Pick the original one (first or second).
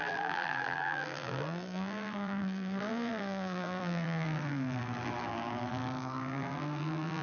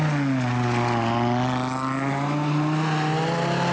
second